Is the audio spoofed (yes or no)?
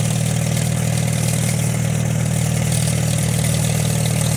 no